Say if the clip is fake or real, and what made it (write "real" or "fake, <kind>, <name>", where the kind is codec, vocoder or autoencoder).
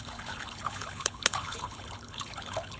fake, codec, HILCodec